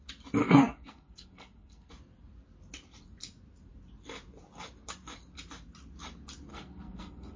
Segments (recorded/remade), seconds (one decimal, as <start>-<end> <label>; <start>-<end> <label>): 0.0-0.4 recorded; 0.4-1.9 remade; 1.9-6.5 recorded; 6.5-7.4 remade